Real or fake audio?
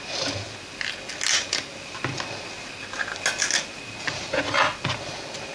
real